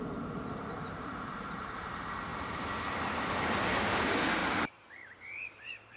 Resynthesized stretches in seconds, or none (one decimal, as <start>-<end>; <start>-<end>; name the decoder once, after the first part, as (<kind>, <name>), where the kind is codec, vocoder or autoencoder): 0.0-2.3 (vocoder, BigVGAN v2); 3.8-6.0